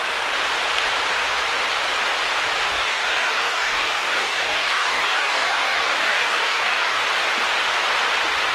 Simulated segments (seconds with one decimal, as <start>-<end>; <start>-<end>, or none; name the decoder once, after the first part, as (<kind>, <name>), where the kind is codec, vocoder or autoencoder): 2.7-7.0 (codec, DAC)